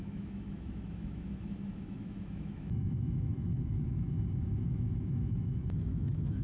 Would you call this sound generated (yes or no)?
yes